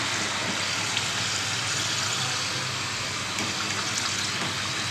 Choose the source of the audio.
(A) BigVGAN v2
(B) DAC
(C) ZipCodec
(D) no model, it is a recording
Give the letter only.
D